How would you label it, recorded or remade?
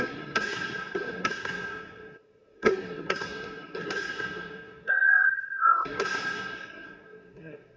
remade